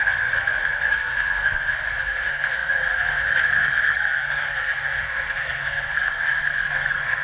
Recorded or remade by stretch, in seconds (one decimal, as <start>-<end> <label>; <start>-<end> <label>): 0.0-7.2 remade

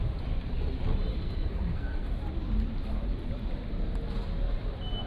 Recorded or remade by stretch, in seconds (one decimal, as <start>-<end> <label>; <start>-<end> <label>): 0.0-1.1 recorded; 1.1-2.1 remade; 2.1-5.1 recorded

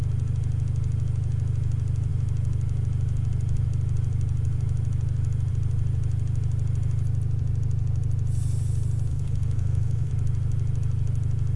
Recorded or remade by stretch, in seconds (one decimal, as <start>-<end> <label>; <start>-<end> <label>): 0.0-9.1 recorded; 9.1-10.1 remade; 10.1-11.6 recorded

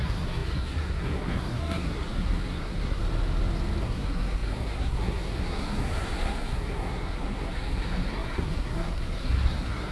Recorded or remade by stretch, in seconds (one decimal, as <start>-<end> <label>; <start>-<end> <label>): 0.0-3.0 remade; 3.0-3.8 recorded; 3.8-9.9 remade

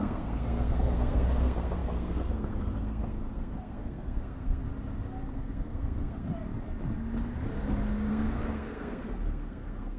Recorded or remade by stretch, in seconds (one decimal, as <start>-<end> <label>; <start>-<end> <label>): 0.0-4.7 remade; 4.7-5.3 recorded; 5.3-6.3 remade; 6.3-8.1 recorded; 8.1-10.0 remade

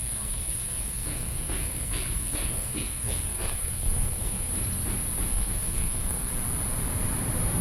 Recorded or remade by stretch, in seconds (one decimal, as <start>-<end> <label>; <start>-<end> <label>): 0.0-4.5 remade; 4.5-5.3 recorded; 5.3-6.3 remade; 6.3-7.6 recorded

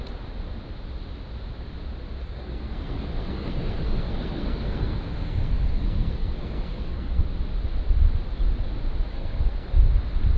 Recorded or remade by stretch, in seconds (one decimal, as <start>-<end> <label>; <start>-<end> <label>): 0.0-2.2 recorded; 2.2-7.2 remade; 7.2-9.1 recorded; 9.1-9.8 remade; 9.8-10.4 recorded

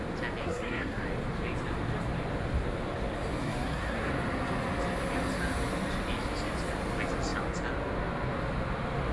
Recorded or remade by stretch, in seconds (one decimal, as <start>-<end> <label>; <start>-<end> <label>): 0.0-0.4 recorded; 0.4-1.0 remade; 1.0-3.4 recorded; 3.4-4.1 remade; 4.1-9.1 recorded